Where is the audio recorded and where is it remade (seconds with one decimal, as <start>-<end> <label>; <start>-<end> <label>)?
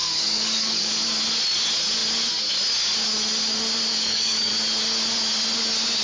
0.0-0.9 remade; 0.9-3.9 recorded; 3.9-4.5 remade; 4.5-6.0 recorded